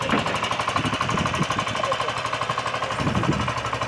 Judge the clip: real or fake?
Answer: real